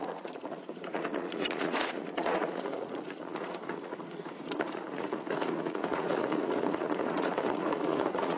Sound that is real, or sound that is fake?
fake